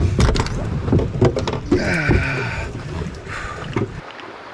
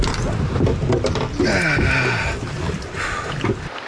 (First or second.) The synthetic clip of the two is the first